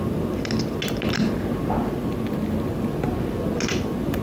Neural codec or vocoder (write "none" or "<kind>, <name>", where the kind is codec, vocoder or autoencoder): none